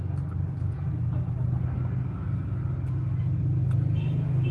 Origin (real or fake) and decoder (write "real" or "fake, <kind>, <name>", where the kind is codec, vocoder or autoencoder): real